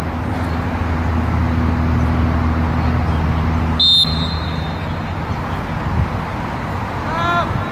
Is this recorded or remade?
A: recorded